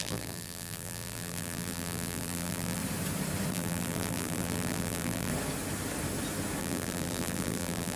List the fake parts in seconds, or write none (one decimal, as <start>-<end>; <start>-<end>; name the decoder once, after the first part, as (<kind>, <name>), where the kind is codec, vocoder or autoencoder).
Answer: 0.0-2.8 (vocoder, BigVGAN v2); 3.5-5.3; 6.6-8.0